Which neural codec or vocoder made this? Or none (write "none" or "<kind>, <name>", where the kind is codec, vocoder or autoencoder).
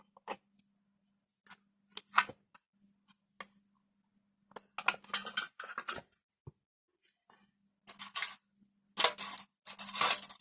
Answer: none